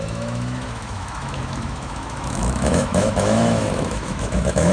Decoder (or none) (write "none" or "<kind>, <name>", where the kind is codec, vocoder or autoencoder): autoencoder, DAC-VAE